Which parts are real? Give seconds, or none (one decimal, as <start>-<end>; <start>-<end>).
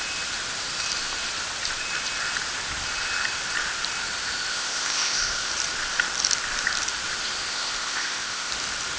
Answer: 0.0-4.5; 5.5-7.5; 8.5-9.0